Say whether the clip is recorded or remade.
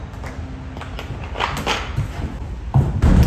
recorded